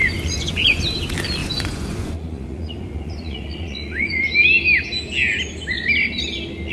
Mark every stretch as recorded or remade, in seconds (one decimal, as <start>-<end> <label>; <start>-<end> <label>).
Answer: 0.0-0.8 remade; 0.8-1.4 recorded; 1.4-4.2 remade; 4.2-6.7 recorded